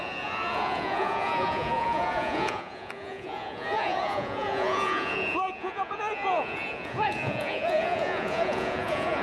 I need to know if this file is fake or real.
fake